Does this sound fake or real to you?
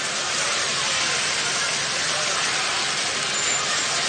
real